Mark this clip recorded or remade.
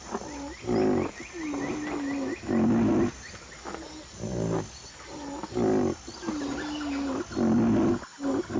recorded